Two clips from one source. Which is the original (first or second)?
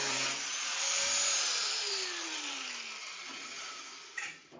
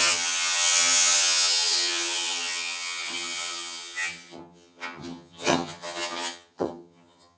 first